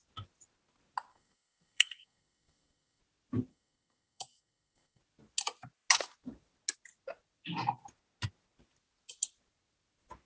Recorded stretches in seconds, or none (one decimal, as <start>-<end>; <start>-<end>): 0.0-1.1; 3.0-3.5; 5.0-10.3